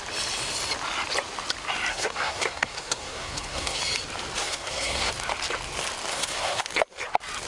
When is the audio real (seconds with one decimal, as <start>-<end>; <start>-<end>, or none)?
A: 0.0-1.9; 3.8-4.4; 5.1-6.1; 6.6-7.5